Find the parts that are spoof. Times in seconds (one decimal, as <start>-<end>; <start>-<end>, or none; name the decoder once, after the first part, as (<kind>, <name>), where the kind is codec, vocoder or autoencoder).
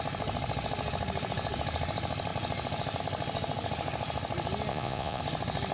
4.7-5.2 (vocoder, Vocos)